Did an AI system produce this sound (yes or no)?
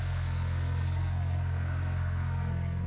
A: yes